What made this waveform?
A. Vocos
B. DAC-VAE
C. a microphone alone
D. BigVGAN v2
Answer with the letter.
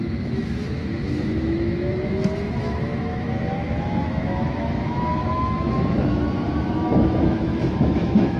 B